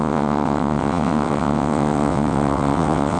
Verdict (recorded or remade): remade